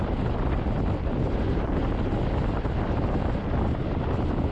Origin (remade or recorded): recorded